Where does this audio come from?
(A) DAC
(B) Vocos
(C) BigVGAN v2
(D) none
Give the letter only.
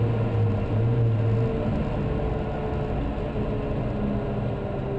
D